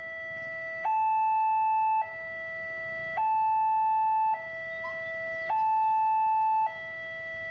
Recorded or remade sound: recorded